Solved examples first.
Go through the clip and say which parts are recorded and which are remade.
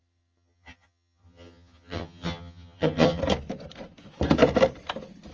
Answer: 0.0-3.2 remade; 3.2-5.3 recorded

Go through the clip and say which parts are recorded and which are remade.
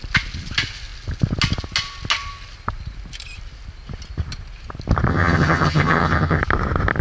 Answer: 0.0-5.1 recorded; 5.1-6.4 remade; 6.4-7.0 recorded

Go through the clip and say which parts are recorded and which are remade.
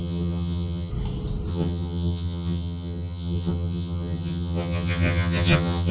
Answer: 0.0-0.9 remade; 0.9-1.5 recorded; 1.5-5.9 remade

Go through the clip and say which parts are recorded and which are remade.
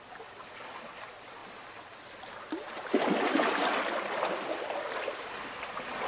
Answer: 0.0-6.1 recorded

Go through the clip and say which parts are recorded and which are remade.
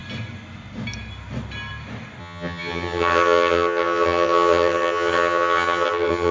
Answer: 0.0-2.2 recorded; 2.2-6.3 remade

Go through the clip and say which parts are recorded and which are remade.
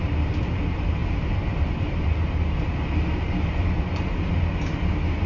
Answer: 0.0-5.3 recorded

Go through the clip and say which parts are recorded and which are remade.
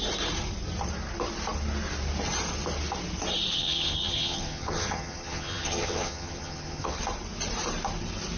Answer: 0.0-3.5 recorded; 3.5-7.0 remade; 7.0-8.4 recorded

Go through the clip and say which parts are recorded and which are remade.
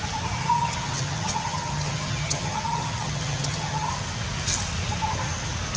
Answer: 0.0-0.4 recorded; 0.4-3.9 remade; 3.9-5.8 recorded